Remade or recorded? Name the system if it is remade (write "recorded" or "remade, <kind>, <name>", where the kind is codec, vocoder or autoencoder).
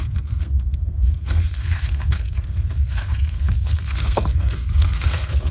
remade, codec, SNAC